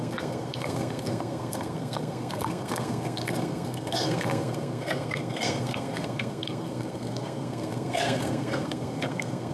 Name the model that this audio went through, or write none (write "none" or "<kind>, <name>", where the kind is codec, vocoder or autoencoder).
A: codec, SNAC